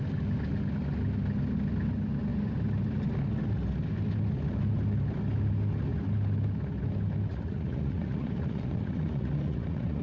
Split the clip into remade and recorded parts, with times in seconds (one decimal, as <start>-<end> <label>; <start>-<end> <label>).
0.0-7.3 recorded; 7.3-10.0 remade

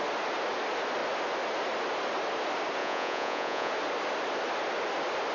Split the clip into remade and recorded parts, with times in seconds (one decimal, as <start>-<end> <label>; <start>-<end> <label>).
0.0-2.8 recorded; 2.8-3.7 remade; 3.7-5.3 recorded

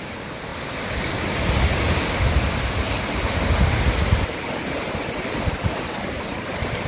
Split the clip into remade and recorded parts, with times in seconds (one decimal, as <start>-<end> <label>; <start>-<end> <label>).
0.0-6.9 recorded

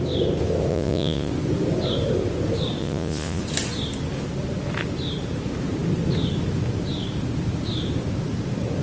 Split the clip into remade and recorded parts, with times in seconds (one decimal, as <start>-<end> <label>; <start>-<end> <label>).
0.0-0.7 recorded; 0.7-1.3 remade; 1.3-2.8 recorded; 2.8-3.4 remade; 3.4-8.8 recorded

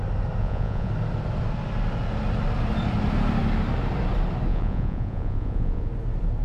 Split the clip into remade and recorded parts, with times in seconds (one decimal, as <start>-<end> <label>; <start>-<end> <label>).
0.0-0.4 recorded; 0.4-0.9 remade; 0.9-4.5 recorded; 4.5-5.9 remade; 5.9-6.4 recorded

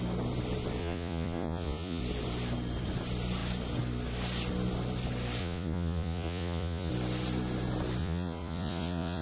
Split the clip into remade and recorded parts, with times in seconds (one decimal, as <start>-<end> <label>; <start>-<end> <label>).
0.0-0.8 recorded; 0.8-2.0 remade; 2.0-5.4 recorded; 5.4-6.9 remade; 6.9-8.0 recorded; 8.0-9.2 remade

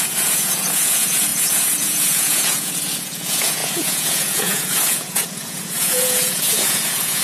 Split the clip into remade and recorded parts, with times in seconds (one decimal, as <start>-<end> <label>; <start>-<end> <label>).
0.0-7.2 remade